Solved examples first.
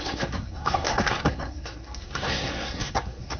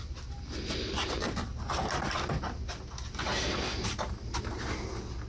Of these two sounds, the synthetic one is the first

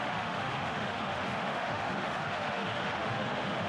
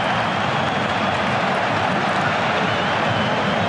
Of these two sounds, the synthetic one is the first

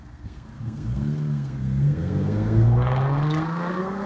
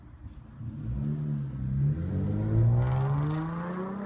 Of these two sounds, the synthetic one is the first